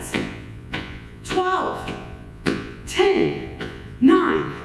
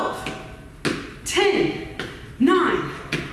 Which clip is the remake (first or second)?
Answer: first